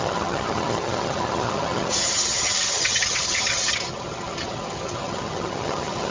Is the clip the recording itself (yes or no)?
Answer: no